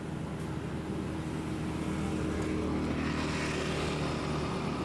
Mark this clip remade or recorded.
recorded